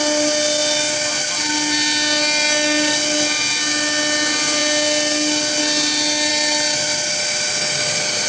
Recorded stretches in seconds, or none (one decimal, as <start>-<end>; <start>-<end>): 0.0-8.3